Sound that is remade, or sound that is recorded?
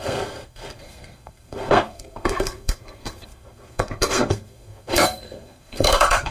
remade